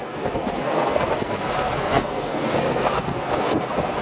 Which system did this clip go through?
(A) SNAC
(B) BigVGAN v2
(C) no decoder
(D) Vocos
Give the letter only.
A